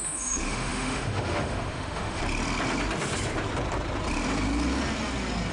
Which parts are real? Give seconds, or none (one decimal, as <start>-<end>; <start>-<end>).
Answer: 2.2-5.5

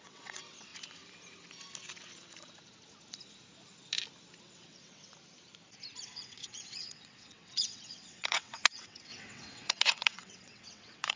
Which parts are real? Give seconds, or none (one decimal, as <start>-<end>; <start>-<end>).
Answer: 0.7-4.4; 5.1-6.0

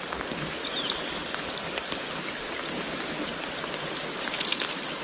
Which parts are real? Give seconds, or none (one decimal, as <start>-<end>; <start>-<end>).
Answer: 0.0-5.0

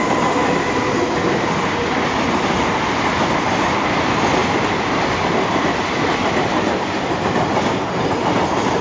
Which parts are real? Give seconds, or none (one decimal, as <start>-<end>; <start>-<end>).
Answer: 0.0-6.2; 7.0-8.8

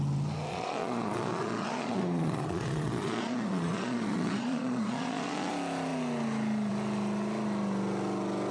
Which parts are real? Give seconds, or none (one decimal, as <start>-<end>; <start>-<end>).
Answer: 0.0-0.5; 5.5-8.5

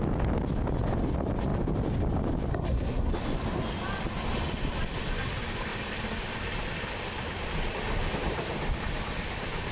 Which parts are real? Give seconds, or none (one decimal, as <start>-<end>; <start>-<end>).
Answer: 0.0-2.5; 3.1-9.7